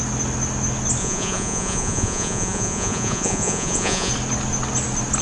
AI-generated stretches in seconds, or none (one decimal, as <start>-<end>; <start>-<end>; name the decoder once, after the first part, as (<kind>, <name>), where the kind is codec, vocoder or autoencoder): 1.0-4.1 (vocoder, Vocos)